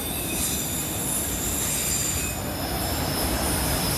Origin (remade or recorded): recorded